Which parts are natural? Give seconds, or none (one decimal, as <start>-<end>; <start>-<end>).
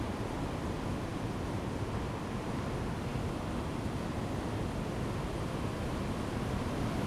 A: 1.1-1.6; 3.1-3.7